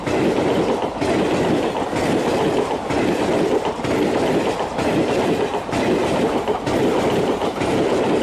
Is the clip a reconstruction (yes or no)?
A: no